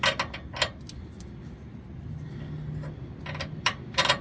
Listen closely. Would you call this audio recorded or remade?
recorded